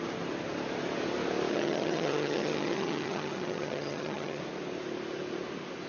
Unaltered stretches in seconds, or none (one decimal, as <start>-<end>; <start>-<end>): 0.0-1.5; 4.4-5.9